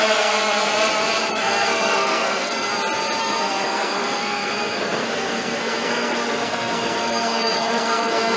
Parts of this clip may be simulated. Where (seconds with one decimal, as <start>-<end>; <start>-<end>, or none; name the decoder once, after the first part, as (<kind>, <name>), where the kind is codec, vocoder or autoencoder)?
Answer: 0.0-0.7 (codec, SNAC); 1.3-2.7; 3.2-8.4